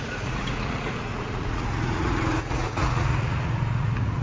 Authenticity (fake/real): fake